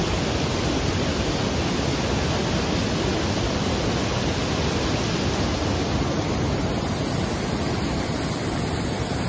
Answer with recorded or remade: recorded